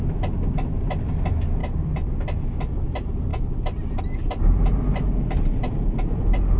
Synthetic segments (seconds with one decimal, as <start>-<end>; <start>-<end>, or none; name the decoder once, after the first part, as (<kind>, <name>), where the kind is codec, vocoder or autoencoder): 1.6-2.1 (vocoder, BigVGAN v2)

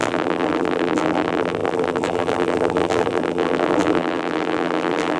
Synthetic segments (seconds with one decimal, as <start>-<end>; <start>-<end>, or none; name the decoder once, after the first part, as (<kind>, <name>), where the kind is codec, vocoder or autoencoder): 0.0-5.2 (vocoder, BigVGAN v2)

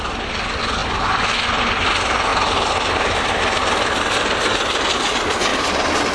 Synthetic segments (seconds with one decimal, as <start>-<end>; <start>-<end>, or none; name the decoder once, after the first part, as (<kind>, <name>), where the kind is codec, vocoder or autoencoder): 5.5-6.1 (vocoder, BigVGAN v2)

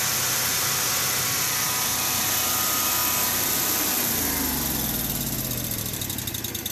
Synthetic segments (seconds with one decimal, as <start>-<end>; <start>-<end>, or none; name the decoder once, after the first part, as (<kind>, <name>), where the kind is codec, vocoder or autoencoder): none

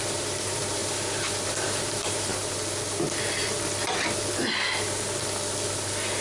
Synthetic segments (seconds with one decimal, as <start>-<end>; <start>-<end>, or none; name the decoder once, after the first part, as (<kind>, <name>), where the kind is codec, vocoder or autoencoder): 0.0-2.3 (vocoder, BigVGAN v2)

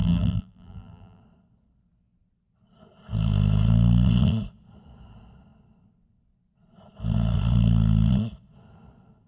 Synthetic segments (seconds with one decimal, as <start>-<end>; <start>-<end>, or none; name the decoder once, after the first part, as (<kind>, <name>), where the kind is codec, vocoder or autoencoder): 0.0-1.2 (vocoder, BigVGAN v2)